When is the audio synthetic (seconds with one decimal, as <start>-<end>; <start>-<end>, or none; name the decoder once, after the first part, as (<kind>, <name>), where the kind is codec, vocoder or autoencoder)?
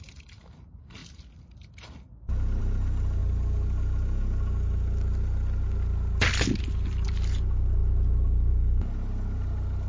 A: 0.0-1.0 (vocoder, BigVGAN v2); 2.6-3.2; 6.6-9.9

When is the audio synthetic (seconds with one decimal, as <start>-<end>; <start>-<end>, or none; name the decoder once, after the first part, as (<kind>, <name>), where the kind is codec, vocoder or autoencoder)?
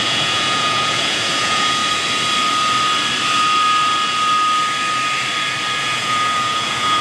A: 0.0-1.8 (vocoder, Vocos); 5.8-7.0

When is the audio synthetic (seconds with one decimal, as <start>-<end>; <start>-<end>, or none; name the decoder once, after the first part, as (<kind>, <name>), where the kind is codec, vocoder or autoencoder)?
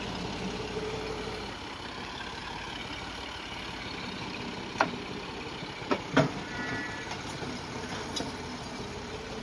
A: none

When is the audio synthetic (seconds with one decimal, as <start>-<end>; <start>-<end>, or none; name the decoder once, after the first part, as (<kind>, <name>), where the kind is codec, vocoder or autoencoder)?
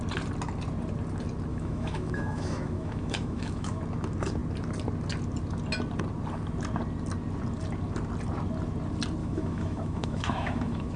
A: 1.5-3.8 (autoencoder, DAC-VAE); 9.2-11.0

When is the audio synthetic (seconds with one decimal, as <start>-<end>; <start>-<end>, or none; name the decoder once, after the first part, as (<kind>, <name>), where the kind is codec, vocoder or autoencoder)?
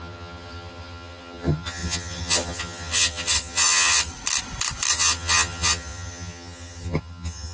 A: 0.0-4.1 (vocoder, HiFi-GAN); 4.9-7.5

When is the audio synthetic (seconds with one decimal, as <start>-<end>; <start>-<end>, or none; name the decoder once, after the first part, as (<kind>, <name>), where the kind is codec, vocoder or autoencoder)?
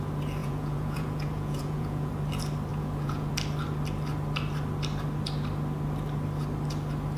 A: 0.4-2.1 (vocoder, Vocos); 2.7-3.3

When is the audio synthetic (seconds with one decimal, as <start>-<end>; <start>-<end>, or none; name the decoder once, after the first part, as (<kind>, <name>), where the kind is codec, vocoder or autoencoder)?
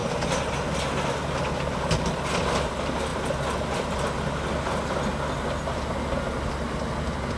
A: none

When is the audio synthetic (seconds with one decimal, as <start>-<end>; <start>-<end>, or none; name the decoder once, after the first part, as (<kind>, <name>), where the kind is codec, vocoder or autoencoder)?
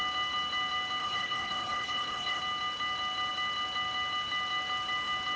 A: 1.0-2.4 (codec, HILCodec)